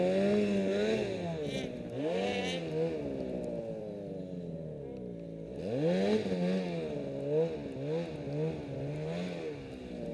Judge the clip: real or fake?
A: real